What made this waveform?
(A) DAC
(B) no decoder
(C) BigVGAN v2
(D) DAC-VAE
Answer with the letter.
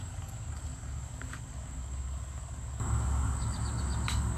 A